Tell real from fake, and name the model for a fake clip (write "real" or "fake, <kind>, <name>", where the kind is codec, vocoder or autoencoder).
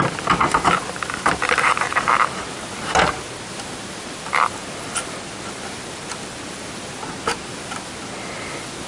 real